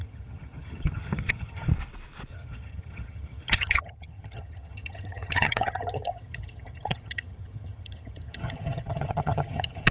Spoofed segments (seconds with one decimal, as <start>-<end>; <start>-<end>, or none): 0.0-1.7; 2.3-9.9